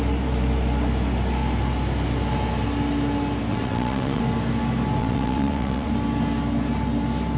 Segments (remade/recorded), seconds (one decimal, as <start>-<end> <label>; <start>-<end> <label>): 0.0-3.5 recorded; 3.5-4.2 remade; 4.2-5.0 recorded; 5.0-5.9 remade; 5.9-7.4 recorded